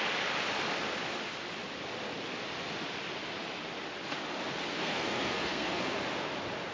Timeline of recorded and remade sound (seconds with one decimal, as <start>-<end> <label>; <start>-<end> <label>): 0.0-4.8 recorded; 4.8-5.8 remade; 5.8-6.7 recorded